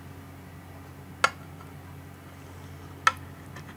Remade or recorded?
recorded